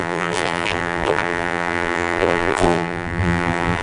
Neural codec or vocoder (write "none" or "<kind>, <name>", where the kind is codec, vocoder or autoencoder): vocoder, BigVGAN v2